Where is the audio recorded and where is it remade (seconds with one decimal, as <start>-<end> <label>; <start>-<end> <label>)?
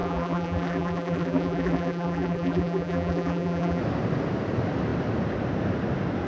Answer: 0.0-3.8 remade; 3.8-6.3 recorded